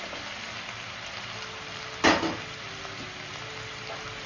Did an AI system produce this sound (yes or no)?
no